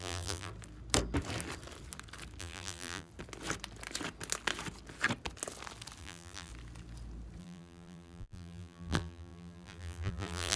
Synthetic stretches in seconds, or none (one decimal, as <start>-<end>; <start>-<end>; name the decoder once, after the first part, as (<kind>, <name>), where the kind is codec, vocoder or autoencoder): 0.0-0.5 (vocoder, BigVGAN v2); 2.4-3.1; 6.0-6.5; 7.4-10.6